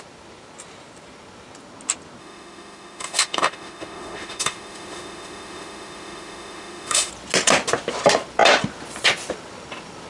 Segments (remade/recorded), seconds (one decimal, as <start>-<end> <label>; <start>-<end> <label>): 0.0-2.2 recorded; 2.2-7.1 remade; 7.1-10.1 recorded